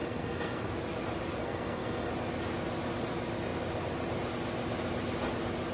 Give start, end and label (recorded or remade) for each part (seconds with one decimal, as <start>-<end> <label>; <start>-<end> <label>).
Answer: 0.0-0.7 remade; 0.7-1.4 recorded; 1.4-2.1 remade; 2.1-5.7 recorded